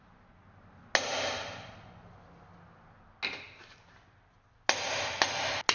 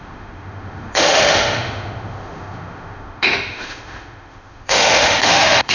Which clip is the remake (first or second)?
second